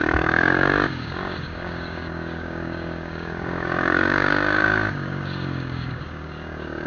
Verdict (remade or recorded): remade